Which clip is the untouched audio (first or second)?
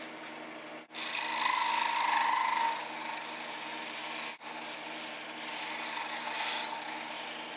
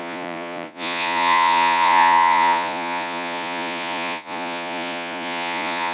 first